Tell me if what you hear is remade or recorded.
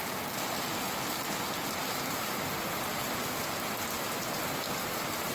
recorded